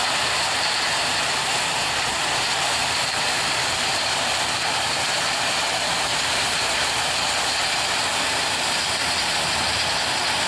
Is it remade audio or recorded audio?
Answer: remade